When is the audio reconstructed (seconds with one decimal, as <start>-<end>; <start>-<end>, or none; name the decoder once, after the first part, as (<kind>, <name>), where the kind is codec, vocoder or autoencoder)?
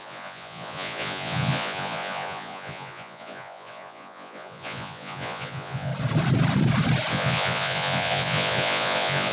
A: 0.0-5.9 (vocoder, Vocos); 7.1-9.3